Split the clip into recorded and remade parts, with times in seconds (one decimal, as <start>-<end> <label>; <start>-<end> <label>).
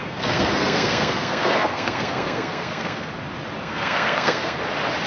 0.0-3.1 remade; 3.1-3.6 recorded; 3.6-4.6 remade; 4.6-5.1 recorded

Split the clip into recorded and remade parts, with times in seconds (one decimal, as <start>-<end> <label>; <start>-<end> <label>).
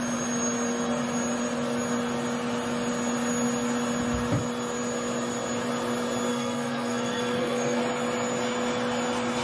0.0-6.3 recorded; 6.3-7.8 remade; 7.8-9.4 recorded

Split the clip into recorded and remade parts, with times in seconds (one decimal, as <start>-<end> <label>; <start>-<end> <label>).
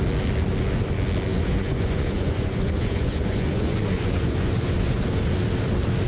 0.0-1.3 recorded; 1.3-5.0 remade; 5.0-6.1 recorded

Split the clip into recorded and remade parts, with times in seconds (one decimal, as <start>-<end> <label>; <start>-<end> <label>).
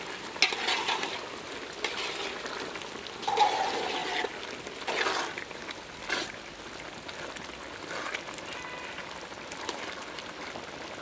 0.0-11.0 recorded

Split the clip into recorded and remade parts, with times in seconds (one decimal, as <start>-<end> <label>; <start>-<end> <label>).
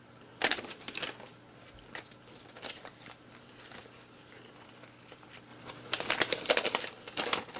0.0-7.6 recorded